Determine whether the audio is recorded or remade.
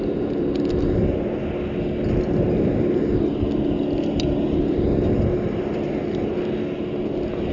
recorded